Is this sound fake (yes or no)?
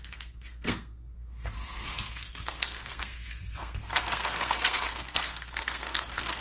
yes